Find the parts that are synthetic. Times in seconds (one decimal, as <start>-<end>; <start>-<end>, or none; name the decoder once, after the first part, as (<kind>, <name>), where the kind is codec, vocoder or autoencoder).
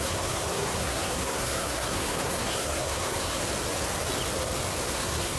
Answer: 0.0-3.4 (codec, SNAC); 4.9-5.4